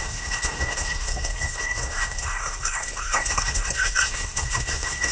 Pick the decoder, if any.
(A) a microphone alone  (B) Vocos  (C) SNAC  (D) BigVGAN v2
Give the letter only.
C